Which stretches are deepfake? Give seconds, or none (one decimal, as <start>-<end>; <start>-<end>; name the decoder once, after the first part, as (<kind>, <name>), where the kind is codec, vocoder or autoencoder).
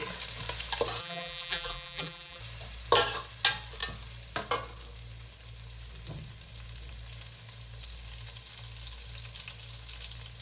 1.0-2.4 (vocoder, BigVGAN v2)